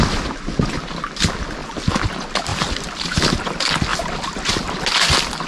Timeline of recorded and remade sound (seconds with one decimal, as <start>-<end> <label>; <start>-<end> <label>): 0.0-1.6 recorded; 1.6-2.1 remade; 2.1-2.5 recorded; 2.5-3.4 remade; 3.4-3.9 recorded; 3.9-4.6 remade; 4.6-5.5 recorded